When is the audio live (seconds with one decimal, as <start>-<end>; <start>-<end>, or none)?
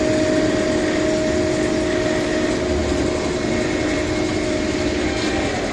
0.0-5.7